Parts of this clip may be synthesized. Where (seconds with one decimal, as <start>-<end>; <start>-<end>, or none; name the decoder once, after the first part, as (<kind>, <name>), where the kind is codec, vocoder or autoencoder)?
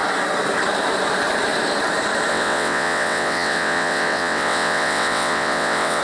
2.3-6.0 (vocoder, WaveNeXt)